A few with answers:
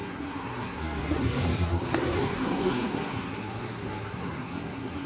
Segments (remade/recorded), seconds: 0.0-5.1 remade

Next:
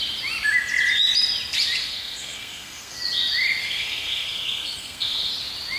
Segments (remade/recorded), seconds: 0.0-1.8 recorded; 1.8-3.0 remade; 3.0-3.6 recorded; 3.6-5.3 remade; 5.3-5.8 recorded

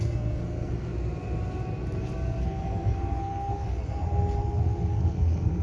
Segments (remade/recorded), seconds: 0.0-0.9 remade; 0.9-2.4 recorded; 2.4-5.6 remade